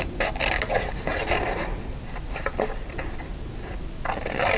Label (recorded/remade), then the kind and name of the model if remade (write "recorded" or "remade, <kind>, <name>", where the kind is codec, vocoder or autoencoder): recorded